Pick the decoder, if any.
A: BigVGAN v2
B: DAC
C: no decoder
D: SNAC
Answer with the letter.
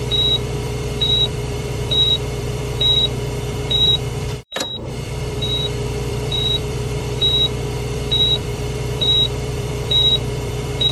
A